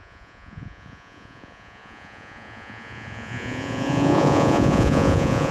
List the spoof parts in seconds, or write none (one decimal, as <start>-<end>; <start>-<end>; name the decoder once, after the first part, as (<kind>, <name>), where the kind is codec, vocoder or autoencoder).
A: 0.0-5.5 (vocoder, Vocos)